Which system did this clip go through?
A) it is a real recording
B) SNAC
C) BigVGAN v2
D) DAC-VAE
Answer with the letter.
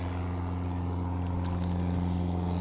A